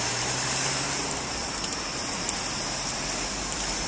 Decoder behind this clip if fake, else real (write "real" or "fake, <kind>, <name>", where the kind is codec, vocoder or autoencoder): fake, vocoder, BigVGAN v2